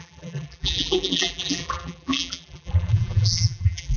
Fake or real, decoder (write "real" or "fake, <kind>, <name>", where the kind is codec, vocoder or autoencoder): fake, vocoder, BigVGAN v2